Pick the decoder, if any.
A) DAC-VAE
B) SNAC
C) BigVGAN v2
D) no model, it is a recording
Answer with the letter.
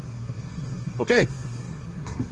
B